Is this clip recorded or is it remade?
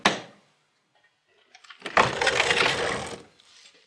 recorded